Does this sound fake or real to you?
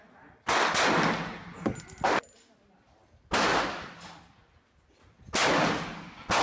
real